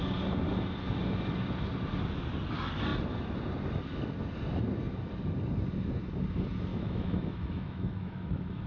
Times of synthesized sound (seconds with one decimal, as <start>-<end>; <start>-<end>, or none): 6.7-8.7